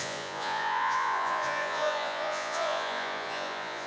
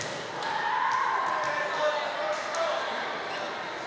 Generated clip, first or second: first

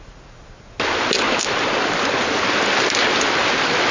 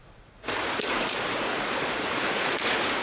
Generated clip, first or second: second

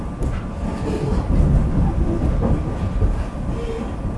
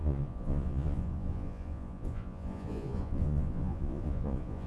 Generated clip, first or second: second